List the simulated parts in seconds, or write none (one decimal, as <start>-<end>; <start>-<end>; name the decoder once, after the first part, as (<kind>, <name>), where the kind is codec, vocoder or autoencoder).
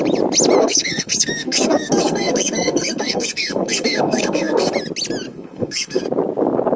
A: 0.6-4.7 (codec, SNAC); 5.3-6.0